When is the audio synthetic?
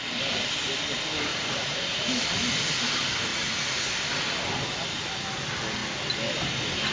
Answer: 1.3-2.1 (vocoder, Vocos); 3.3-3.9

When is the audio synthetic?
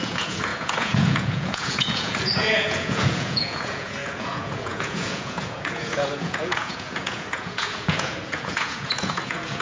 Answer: 0.0-9.6 (vocoder, Vocos)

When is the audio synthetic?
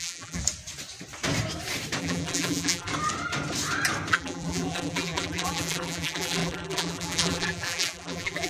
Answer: 0.0-0.4 (vocoder, BigVGAN v2); 2.0-2.9; 4.1-8.5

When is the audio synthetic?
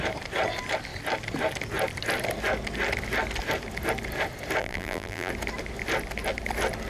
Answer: 4.6-5.3 (vocoder, BigVGAN v2)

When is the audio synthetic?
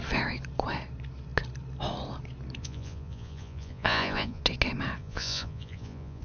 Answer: 2.6-4.4 (vocoder, Vocos); 5.0-6.2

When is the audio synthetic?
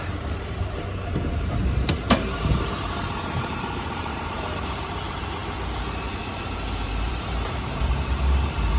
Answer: 0.0-5.4 (vocoder, BigVGAN v2); 6.4-8.8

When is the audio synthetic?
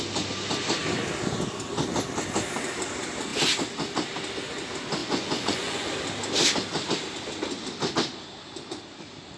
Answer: 5.0-5.9 (vocoder, Vocos)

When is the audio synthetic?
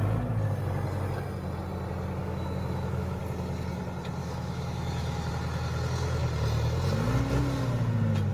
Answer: 2.2-3.2 (autoencoder, DAC-VAE); 4.2-5.3